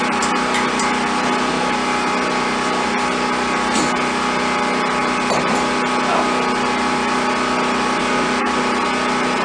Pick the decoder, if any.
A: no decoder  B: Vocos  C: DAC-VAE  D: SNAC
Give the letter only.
A